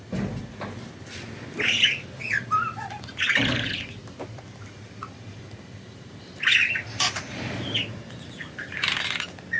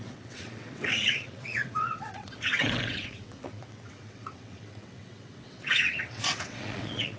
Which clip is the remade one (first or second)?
second